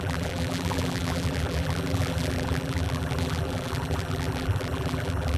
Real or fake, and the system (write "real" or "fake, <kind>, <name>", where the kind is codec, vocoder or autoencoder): fake, vocoder, BigVGAN v2